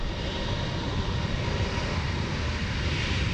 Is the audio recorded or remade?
recorded